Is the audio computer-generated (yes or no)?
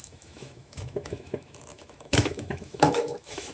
yes